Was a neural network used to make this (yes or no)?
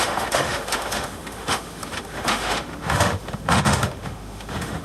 yes